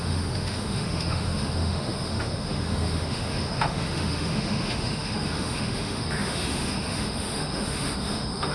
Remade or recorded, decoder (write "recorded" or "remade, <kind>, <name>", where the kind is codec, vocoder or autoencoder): remade, autoencoder, DAC-VAE